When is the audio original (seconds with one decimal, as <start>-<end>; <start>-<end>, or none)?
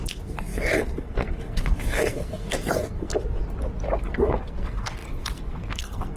3.1-4.0